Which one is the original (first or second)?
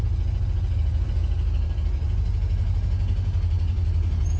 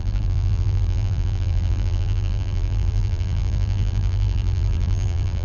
first